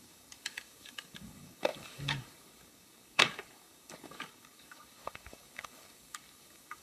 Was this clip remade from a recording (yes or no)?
yes